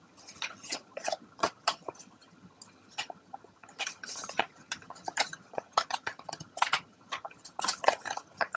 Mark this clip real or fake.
fake